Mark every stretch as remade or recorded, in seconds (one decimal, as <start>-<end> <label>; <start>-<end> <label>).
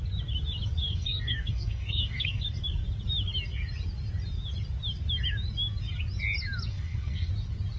0.0-0.8 recorded; 0.8-2.4 remade; 2.4-6.7 recorded; 6.7-7.3 remade; 7.3-7.8 recorded